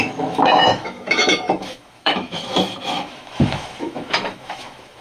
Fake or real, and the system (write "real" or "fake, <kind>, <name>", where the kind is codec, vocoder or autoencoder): fake, autoencoder, DAC-VAE